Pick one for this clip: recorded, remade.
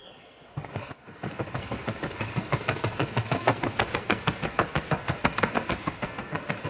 remade